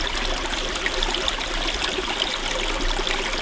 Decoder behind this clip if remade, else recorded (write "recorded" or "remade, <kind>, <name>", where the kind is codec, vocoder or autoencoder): recorded